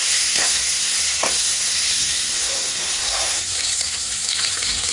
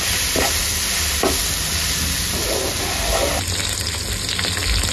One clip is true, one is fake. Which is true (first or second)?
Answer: second